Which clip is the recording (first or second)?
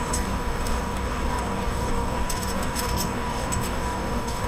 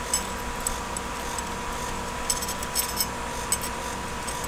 second